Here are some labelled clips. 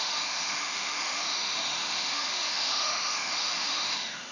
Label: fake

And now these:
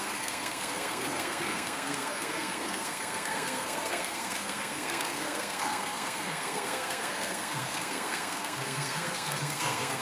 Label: fake